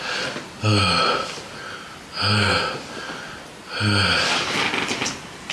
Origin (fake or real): real